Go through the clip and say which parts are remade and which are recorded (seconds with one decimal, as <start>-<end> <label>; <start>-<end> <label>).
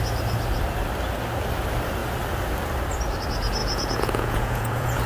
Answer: 0.0-3.6 recorded; 3.6-5.1 remade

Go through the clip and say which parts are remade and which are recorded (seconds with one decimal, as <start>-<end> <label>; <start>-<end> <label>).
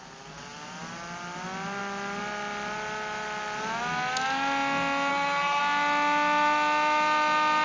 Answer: 0.0-5.1 recorded; 5.1-5.6 remade; 5.6-7.6 recorded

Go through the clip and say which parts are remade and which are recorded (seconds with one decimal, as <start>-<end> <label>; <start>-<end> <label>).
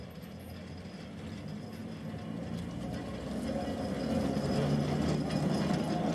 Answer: 0.0-6.1 recorded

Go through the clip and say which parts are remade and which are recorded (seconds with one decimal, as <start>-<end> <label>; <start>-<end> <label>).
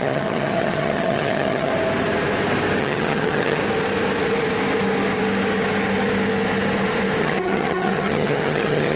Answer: 0.0-1.7 remade; 1.7-2.8 recorded; 2.8-3.6 remade; 3.6-7.2 recorded; 7.2-9.0 remade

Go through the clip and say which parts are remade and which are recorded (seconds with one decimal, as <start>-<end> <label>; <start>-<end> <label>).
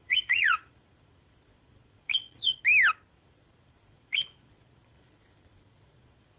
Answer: 0.0-2.6 remade; 2.6-3.1 recorded; 3.1-6.4 remade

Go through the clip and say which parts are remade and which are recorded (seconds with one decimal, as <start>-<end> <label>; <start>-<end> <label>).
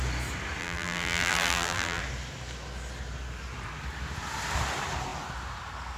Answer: 0.0-0.6 recorded; 0.6-2.0 remade; 2.0-6.0 recorded